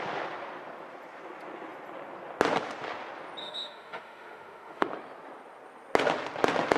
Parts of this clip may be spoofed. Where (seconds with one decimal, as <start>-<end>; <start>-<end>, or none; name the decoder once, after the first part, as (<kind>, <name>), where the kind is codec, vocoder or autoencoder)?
3.4-4.9 (autoencoder, DAC-VAE)